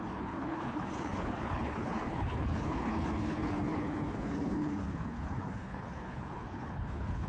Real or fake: fake